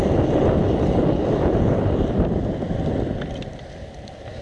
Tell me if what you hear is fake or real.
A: real